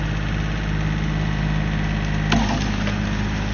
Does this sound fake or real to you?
real